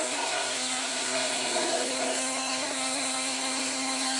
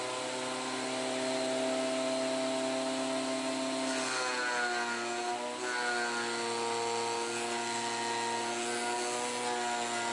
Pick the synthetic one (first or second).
first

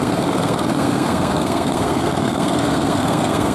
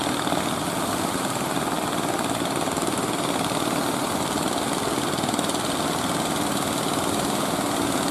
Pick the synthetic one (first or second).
first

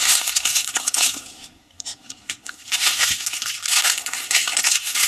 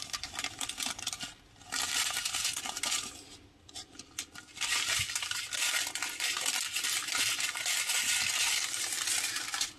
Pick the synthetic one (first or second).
first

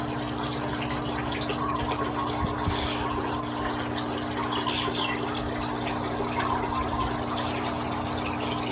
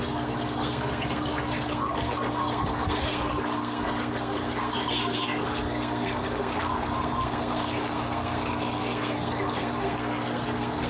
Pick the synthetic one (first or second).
second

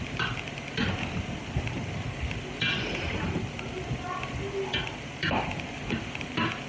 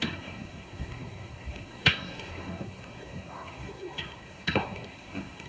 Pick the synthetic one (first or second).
second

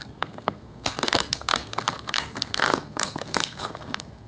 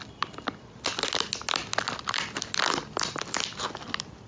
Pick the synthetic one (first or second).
first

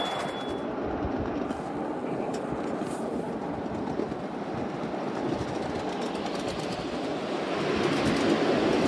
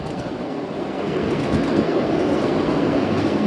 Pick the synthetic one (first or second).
second